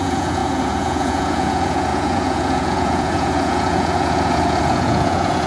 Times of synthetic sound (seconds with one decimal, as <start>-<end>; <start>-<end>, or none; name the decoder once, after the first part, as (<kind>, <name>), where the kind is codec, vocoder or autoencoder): 0.0-5.5 (vocoder, Vocos)